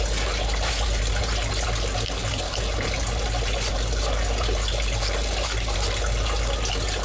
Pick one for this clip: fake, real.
real